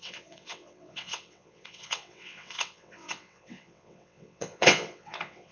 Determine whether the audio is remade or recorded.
remade